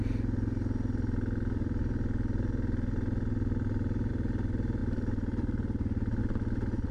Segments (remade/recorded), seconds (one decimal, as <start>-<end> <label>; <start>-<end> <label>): 0.0-6.9 recorded